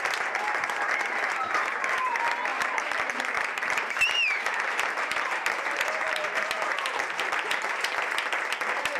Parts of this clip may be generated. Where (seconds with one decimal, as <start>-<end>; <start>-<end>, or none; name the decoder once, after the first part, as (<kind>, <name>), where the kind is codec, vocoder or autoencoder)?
2.5-7.3 (vocoder, BigVGAN v2)